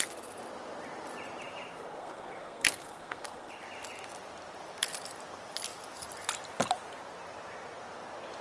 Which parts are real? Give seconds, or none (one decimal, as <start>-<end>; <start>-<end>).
0.0-1.8; 3.5-8.4